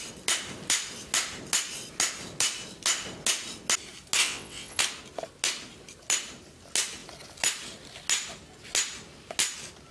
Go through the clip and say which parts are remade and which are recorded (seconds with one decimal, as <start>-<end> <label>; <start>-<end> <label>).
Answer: 0.0-4.2 recorded; 4.2-4.8 remade; 4.8-9.9 recorded